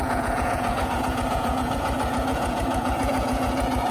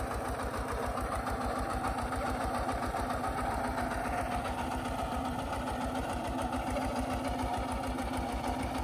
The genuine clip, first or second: second